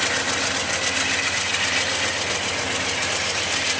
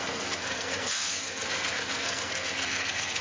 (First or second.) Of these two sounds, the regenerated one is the second